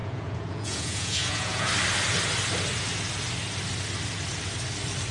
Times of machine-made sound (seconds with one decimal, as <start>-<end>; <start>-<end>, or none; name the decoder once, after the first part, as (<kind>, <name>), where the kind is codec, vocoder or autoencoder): 0.0-1.7 (vocoder, Vocos)